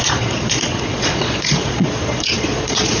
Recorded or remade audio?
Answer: remade